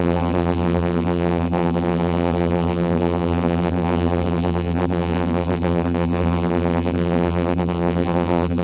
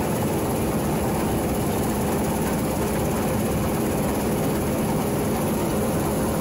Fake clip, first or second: first